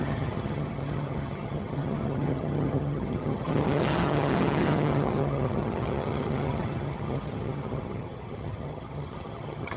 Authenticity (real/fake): fake